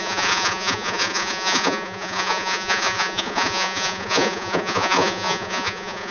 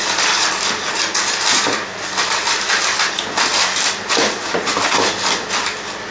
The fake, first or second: first